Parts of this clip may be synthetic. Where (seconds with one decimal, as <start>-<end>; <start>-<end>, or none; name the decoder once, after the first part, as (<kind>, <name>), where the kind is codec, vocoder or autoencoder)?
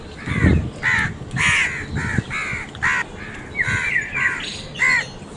none